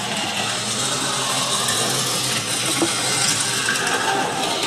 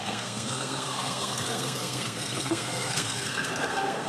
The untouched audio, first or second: first